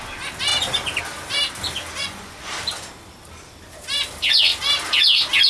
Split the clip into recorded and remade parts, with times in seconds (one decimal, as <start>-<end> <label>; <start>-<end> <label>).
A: 0.0-2.0 recorded; 2.0-2.5 remade; 2.5-5.5 recorded